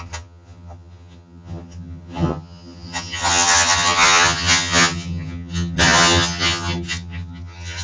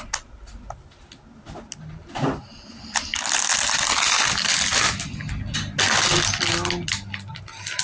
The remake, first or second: first